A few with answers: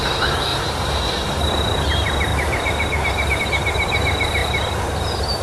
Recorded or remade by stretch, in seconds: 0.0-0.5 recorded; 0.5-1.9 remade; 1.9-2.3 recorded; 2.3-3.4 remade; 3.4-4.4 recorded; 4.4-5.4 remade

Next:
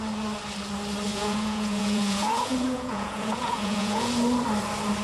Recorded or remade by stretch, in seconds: 0.0-1.1 recorded; 1.1-4.1 remade; 4.1-5.0 recorded

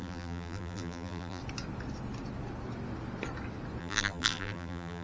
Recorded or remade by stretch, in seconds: 0.0-1.4 remade; 1.4-3.8 recorded; 3.8-5.0 remade

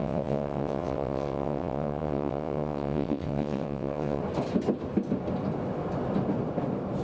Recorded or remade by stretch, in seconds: 0.0-4.2 remade; 4.2-7.0 recorded

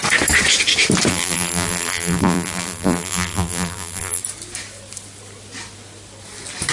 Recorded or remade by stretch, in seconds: 0.0-1.1 recorded; 1.1-4.2 remade; 4.2-6.7 recorded